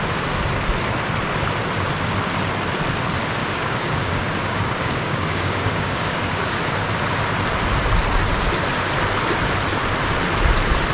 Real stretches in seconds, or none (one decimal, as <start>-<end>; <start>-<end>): 0.0-3.4; 6.6-10.9